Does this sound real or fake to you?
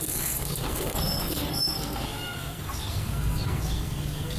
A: fake